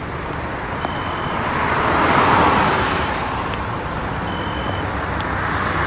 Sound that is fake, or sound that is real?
fake